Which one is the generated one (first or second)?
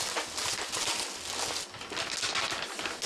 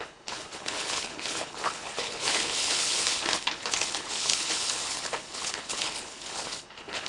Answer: second